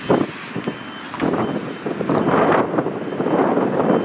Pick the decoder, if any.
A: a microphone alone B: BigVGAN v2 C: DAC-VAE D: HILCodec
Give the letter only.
A